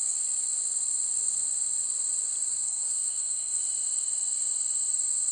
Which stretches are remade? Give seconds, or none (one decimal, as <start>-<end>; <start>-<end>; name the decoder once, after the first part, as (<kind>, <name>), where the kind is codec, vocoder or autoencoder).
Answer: 2.6-3.6 (codec, SNAC)